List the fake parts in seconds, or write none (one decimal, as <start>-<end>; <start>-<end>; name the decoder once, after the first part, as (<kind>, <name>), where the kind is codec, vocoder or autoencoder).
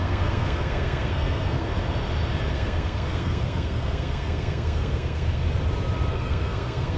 0.0-1.7 (codec, SNAC); 2.5-5.4; 6.1-7.0